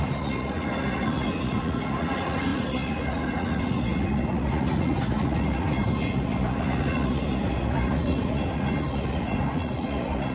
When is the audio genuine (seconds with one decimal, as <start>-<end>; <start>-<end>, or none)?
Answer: none